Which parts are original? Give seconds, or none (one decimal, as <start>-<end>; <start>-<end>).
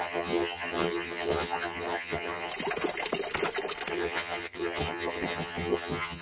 2.5-3.9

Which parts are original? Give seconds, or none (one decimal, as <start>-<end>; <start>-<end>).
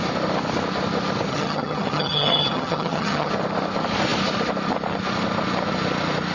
0.0-1.3; 3.3-6.3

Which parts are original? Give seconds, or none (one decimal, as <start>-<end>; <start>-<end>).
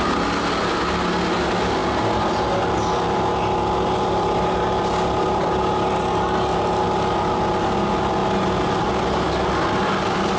0.0-10.4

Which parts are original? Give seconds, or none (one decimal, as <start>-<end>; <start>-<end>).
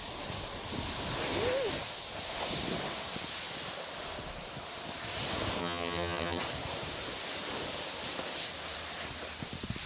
0.0-5.6; 6.4-9.9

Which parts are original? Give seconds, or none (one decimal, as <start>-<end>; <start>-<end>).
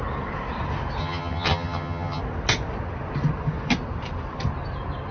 0.0-1.0; 2.2-5.1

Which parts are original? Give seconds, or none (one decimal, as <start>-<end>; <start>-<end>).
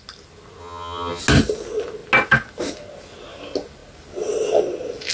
0.0-0.6; 1.2-5.1